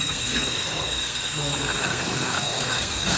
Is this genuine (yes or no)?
no